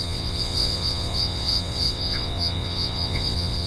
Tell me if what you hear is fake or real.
fake